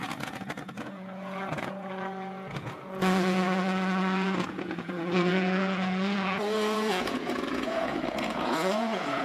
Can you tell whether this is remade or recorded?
remade